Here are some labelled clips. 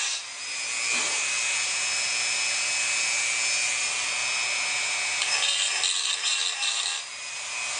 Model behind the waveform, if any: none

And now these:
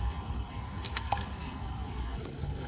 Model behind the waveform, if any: codec, SNAC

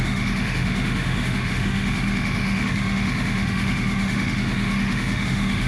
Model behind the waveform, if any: autoencoder, DAC-VAE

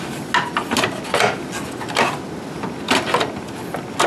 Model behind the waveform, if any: none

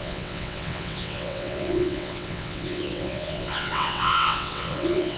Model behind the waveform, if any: vocoder, WaveNeXt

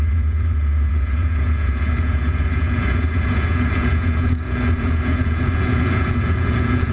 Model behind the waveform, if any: vocoder, Vocos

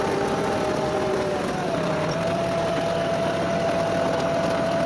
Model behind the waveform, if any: vocoder, BigVGAN v2